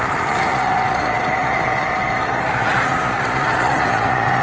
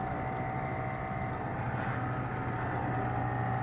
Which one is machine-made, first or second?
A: first